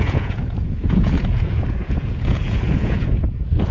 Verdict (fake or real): fake